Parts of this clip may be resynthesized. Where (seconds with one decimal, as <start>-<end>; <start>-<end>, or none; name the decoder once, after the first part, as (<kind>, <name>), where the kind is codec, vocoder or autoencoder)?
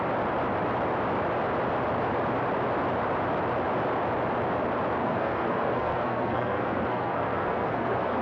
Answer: 5.0-8.2 (codec, SNAC)